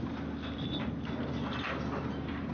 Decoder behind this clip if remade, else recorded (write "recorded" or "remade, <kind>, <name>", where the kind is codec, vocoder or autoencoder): recorded